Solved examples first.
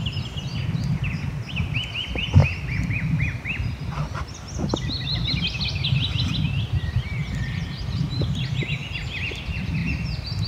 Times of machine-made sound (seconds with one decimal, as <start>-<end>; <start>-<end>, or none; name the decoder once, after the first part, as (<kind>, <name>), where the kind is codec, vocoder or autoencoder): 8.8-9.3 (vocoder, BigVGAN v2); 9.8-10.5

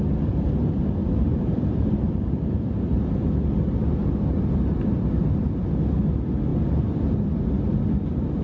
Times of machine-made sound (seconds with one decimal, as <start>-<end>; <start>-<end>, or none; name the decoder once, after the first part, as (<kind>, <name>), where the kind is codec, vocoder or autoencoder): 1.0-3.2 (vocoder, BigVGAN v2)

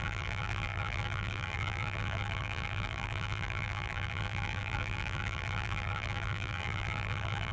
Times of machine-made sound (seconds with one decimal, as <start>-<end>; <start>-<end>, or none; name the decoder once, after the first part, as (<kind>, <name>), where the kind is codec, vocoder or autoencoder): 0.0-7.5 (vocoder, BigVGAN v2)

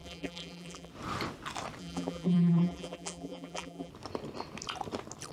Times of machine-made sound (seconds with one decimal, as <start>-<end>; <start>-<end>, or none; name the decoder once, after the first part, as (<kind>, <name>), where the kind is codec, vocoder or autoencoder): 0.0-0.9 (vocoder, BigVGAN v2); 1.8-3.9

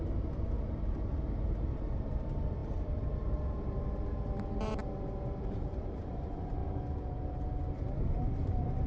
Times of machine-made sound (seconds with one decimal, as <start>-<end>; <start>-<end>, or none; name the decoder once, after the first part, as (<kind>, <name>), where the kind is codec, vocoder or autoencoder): 0.0-6.6 (vocoder, BigVGAN v2); 8.0-8.9